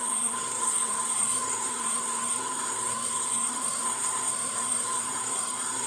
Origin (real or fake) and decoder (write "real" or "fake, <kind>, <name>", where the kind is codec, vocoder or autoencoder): fake, codec, SNAC